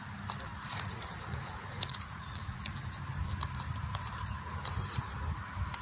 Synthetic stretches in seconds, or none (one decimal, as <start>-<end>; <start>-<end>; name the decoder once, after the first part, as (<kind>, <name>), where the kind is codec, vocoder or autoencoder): 0.5-2.7 (vocoder, Vocos)